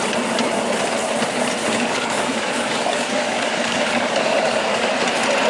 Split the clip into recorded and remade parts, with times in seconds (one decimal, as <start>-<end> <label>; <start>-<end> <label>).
0.0-1.6 recorded; 1.6-4.9 remade; 4.9-5.5 recorded